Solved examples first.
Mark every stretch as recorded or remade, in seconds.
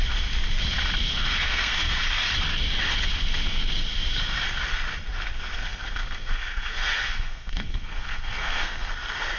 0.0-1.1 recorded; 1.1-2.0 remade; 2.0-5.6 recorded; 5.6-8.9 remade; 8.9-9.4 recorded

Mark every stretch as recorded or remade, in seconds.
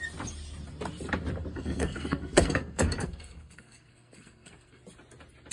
0.0-1.5 recorded; 1.5-4.8 remade; 4.8-5.5 recorded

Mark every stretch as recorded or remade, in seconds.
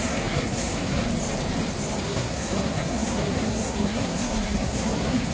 0.0-1.0 remade; 1.0-2.0 recorded; 2.0-5.3 remade